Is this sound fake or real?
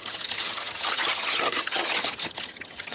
fake